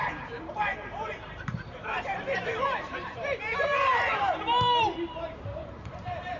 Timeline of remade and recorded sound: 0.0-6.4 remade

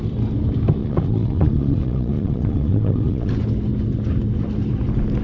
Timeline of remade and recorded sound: 0.0-0.8 recorded; 0.8-3.3 remade; 3.3-5.2 recorded

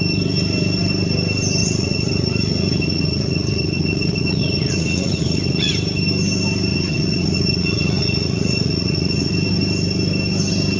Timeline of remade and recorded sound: 0.0-1.6 recorded; 1.6-5.7 remade; 5.7-6.7 recorded; 6.7-9.3 remade; 9.3-10.8 recorded

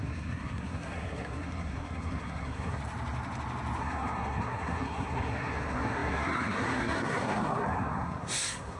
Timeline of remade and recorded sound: 0.0-2.8 remade; 2.8-3.8 recorded; 3.8-8.8 remade

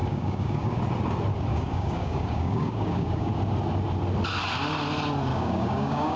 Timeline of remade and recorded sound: 0.0-0.8 remade; 0.8-1.5 recorded; 1.5-3.3 remade; 3.3-5.3 recorded; 5.3-6.2 remade

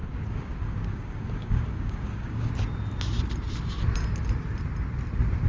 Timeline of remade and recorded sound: 0.0-2.5 remade; 2.5-5.5 recorded